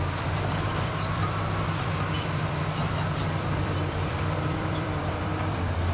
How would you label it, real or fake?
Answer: fake